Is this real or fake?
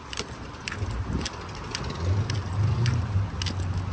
real